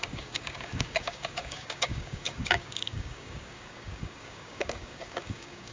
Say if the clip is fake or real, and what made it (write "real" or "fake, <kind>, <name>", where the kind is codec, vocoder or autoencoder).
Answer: fake, codec, DAC